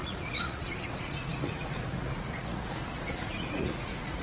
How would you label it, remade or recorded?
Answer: remade